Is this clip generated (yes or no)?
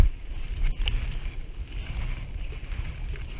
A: no